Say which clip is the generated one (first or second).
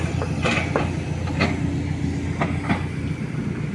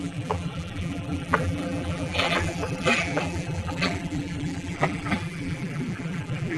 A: second